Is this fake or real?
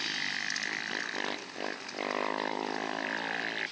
real